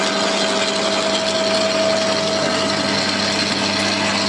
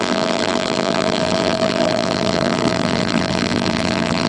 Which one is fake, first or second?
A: second